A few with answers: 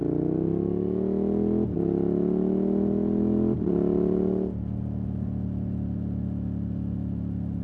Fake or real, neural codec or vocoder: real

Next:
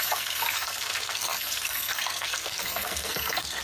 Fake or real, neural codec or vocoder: fake, codec, SNAC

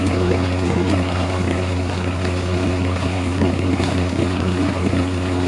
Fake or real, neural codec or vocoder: fake, codec, SNAC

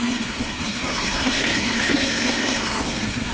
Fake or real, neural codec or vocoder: fake, codec, SNAC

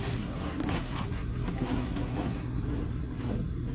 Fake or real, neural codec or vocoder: fake, codec, SNAC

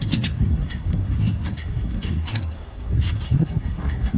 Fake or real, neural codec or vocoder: fake, codec, SNAC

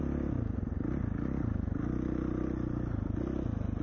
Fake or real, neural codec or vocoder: real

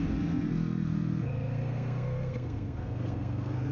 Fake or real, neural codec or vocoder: fake, codec, SNAC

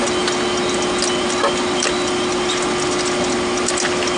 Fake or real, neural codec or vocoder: real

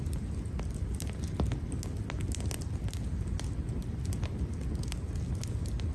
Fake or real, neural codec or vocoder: real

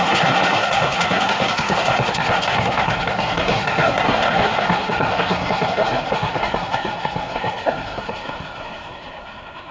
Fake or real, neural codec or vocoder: fake, codec, SNAC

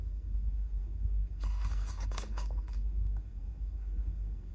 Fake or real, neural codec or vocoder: fake, codec, SNAC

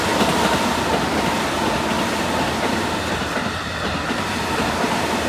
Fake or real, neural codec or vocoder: real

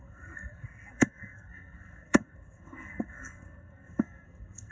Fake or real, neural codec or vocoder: fake, codec, SNAC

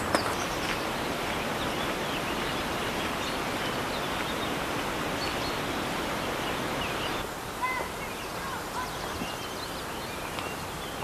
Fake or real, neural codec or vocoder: real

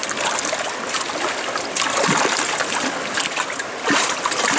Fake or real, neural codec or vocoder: real